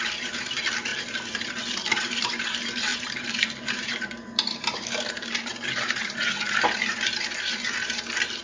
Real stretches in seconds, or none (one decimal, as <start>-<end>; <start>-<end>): none